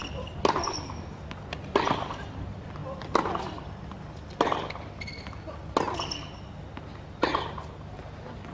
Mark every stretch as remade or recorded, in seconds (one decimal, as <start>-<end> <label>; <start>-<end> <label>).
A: 0.0-8.5 recorded